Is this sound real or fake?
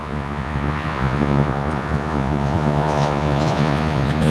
fake